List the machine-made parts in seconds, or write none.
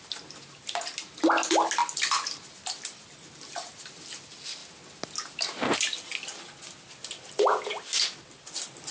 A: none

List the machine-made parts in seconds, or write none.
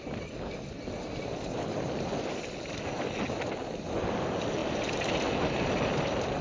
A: none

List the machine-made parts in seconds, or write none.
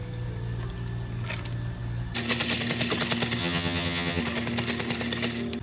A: 3.4-4.2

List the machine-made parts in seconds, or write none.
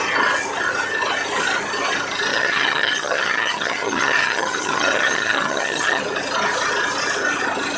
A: 2.3-6.0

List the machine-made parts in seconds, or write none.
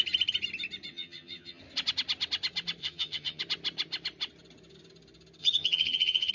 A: 0.9-1.6; 2.8-3.4; 5.4-6.3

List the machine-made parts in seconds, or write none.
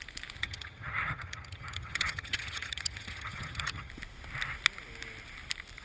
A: 0.4-3.9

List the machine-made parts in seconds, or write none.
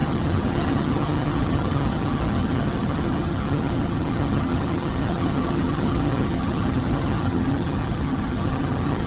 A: 0.0-9.1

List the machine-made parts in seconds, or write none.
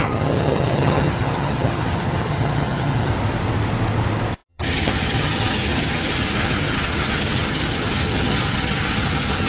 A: 0.0-3.1; 4.5-9.5